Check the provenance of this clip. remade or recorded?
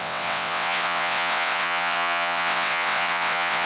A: remade